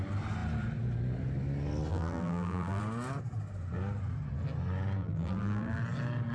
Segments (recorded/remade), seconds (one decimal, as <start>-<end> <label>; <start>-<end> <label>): 0.0-1.9 recorded; 1.9-2.8 remade; 2.8-5.0 recorded; 5.0-5.8 remade; 5.8-6.3 recorded